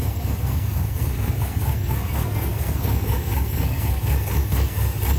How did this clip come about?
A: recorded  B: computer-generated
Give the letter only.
B